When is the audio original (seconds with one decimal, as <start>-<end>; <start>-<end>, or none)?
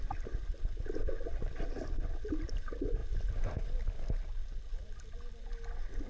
0.0-6.1